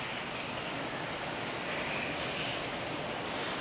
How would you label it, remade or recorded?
recorded